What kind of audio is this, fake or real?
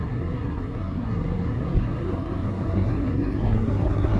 fake